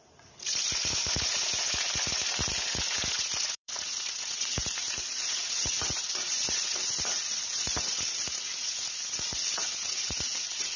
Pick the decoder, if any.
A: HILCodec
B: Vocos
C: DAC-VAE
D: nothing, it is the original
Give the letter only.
B